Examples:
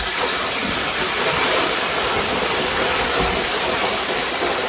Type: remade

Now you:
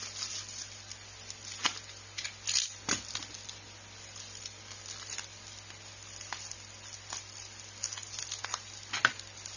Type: recorded